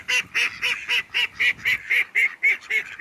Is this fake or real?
real